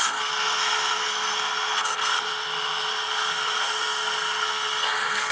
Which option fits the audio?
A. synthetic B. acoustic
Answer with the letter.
A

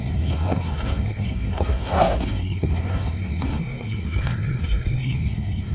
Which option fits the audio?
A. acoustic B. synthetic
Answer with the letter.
B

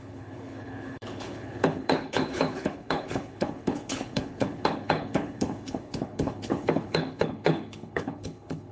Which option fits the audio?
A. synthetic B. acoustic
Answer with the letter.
A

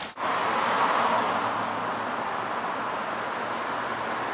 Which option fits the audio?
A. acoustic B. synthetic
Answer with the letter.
A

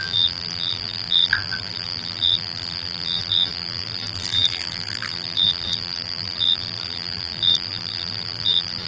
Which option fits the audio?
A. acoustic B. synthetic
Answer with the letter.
B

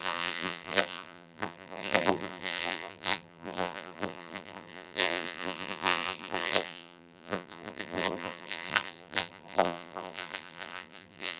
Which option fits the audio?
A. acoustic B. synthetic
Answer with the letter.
B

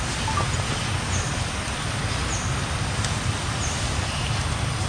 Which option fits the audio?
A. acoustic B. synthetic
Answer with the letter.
A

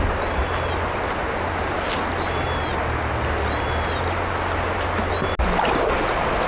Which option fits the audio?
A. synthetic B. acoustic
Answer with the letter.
B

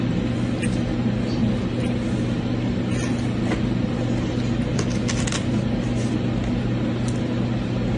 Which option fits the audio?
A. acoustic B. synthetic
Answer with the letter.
A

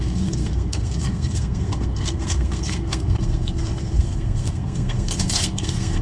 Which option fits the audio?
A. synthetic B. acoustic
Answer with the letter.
A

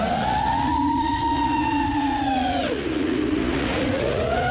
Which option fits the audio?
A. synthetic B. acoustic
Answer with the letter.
A